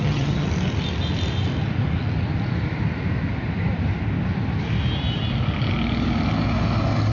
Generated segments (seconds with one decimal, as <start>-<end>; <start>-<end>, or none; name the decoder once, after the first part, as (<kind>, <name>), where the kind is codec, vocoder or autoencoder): 0.0-0.5 (vocoder, HiFi-GAN)